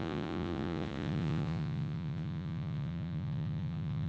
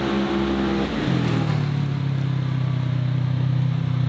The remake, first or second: first